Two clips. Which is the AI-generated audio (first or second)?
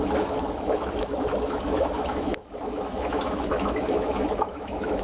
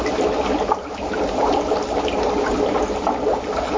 first